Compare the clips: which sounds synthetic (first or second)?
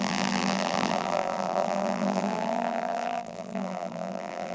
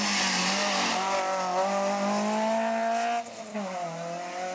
first